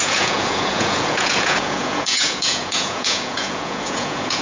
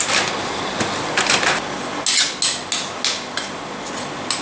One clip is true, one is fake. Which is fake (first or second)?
first